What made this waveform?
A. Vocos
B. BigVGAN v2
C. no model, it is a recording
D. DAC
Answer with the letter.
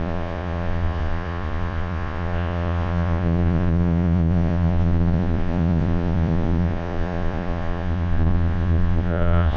A